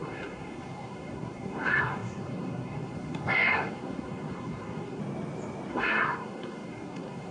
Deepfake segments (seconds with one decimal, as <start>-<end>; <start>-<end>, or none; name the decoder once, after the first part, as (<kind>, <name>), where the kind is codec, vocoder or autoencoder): 0.0-5.0 (codec, SNAC); 5.7-7.3